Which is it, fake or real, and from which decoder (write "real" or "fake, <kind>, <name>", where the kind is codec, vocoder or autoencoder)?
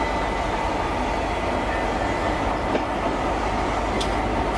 real